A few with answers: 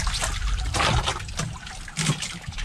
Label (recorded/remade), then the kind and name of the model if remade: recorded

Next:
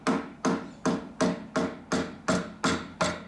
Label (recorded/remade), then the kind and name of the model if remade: recorded